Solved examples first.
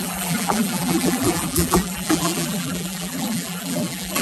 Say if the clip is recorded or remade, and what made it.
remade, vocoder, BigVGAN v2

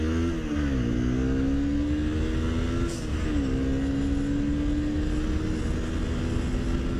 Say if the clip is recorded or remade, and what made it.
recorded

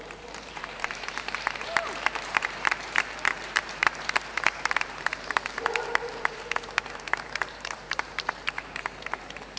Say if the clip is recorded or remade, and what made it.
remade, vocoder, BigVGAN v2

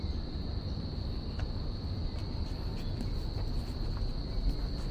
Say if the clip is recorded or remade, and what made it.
recorded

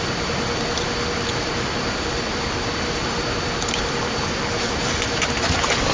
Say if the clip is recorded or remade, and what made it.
remade, vocoder, BigVGAN v2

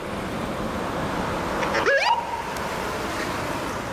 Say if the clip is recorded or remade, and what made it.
recorded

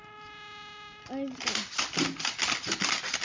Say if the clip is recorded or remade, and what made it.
recorded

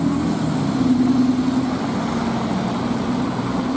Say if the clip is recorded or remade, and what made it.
recorded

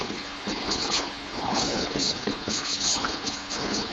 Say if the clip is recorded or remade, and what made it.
remade, codec, HILCodec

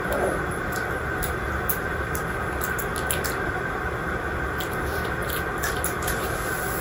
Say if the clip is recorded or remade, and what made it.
recorded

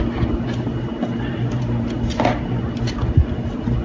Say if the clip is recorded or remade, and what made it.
recorded